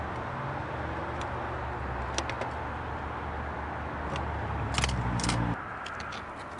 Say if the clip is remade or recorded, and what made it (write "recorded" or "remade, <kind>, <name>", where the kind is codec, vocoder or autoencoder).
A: recorded